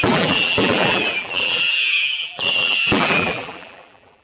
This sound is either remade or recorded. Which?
remade